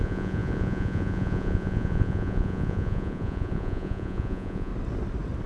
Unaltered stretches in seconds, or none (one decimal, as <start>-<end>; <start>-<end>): 4.7-5.5